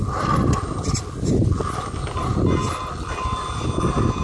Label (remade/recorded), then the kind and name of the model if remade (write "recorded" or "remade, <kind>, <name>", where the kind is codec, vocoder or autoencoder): recorded